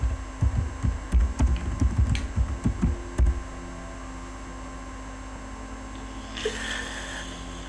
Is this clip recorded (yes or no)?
yes